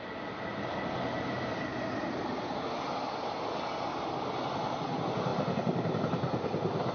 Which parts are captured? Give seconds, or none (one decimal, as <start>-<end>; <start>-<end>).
0.0-1.7; 2.2-6.9